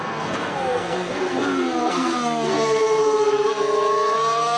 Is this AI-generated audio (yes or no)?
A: yes